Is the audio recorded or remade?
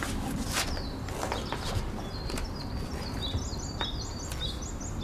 recorded